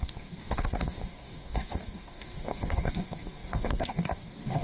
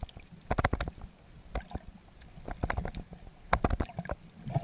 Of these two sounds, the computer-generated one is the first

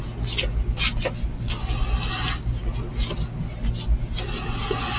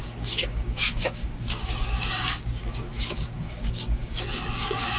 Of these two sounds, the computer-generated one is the second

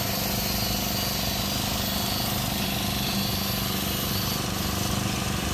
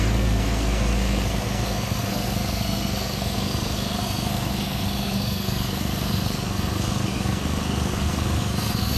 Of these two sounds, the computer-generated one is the second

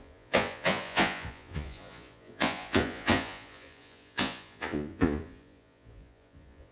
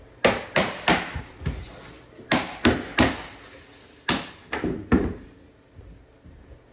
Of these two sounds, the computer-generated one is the first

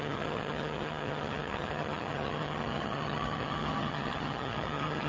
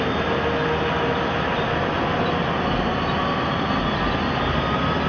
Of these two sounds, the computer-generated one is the first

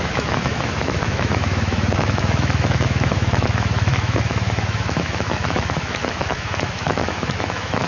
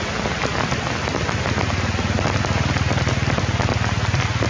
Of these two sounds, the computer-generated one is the first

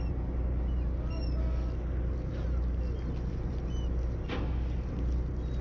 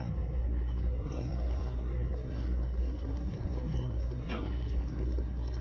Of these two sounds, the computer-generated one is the second